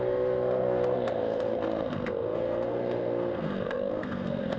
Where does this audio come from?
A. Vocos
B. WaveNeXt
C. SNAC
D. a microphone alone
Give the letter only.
C